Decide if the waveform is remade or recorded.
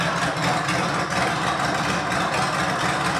recorded